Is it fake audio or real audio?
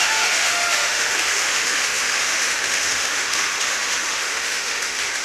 fake